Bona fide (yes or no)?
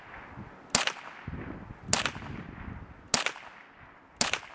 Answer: yes